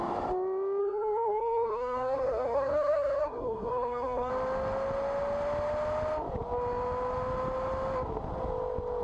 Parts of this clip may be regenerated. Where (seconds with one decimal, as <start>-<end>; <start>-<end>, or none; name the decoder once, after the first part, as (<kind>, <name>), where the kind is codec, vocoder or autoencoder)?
0.8-4.3 (codec, SNAC)